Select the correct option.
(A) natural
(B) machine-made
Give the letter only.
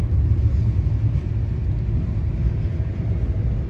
A